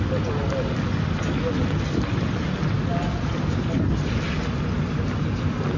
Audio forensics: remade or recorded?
recorded